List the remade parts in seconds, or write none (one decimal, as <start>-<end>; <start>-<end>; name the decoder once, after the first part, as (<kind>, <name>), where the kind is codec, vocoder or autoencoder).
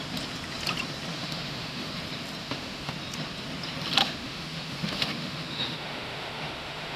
1.1-1.9 (autoencoder, DAC-VAE); 2.4-2.9; 4.0-7.0